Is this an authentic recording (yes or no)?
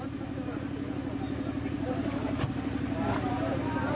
no